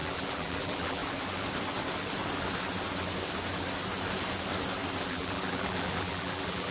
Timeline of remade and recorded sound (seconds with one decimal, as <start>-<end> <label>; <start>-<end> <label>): 0.0-1.0 remade; 1.0-5.0 recorded; 5.0-6.7 remade